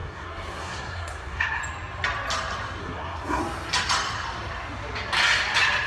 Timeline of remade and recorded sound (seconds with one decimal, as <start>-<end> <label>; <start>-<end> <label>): 0.0-1.6 remade; 1.6-2.8 recorded; 2.8-3.4 remade; 3.4-5.9 recorded